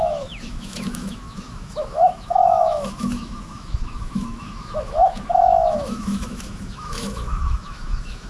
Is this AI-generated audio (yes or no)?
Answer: yes